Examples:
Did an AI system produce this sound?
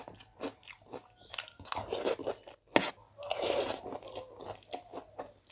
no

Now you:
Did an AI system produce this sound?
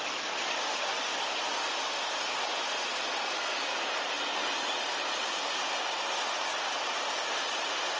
no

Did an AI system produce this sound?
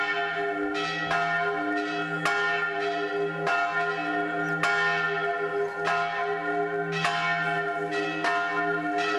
no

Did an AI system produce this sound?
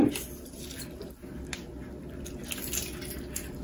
no